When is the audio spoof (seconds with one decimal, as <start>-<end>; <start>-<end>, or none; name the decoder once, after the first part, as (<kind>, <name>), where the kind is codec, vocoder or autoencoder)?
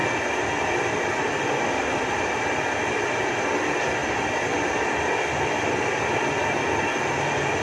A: none